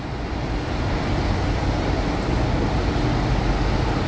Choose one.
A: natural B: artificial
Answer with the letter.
A